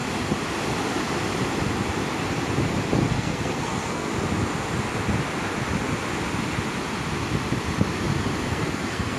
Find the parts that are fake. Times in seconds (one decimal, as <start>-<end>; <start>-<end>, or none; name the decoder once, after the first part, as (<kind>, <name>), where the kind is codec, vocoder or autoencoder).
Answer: 3.1-4.1 (codec, SNAC); 8.5-9.2